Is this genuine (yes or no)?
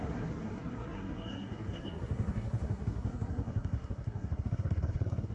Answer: no